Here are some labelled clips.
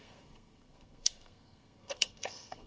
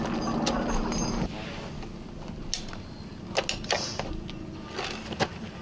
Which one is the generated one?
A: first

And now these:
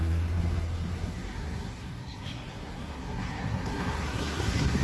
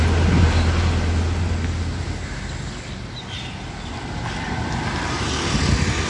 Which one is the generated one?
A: first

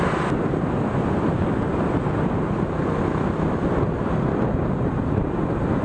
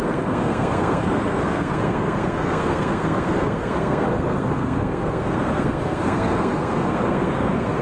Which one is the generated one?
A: second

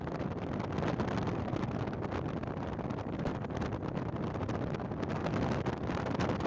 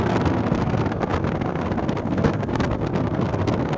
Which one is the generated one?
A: second